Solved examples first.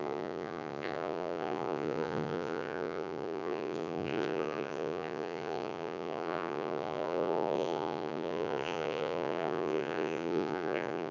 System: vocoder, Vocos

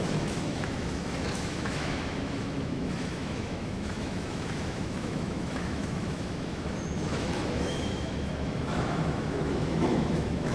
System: autoencoder, DAC-VAE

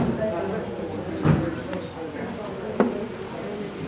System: none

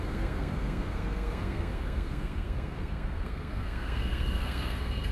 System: codec, SNAC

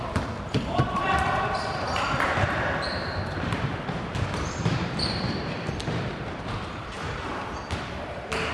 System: vocoder, BigVGAN v2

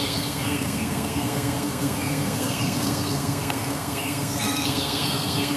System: codec, SNAC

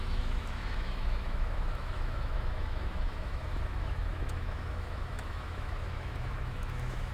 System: autoencoder, DAC-VAE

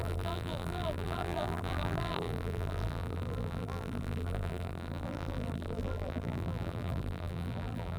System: vocoder, BigVGAN v2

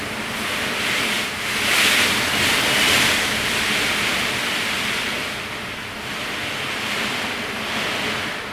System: none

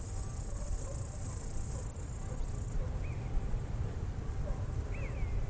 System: vocoder, BigVGAN v2